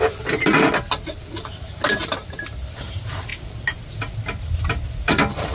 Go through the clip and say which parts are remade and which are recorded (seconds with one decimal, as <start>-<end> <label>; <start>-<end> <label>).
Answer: 0.0-5.5 recorded